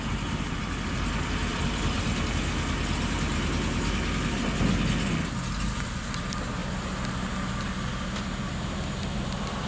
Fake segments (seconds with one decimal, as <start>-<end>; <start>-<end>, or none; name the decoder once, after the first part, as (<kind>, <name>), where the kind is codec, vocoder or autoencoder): 1.5-2.0 (vocoder, BigVGAN v2)